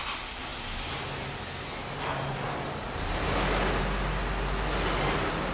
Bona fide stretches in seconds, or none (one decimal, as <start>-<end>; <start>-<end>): 0.0-5.5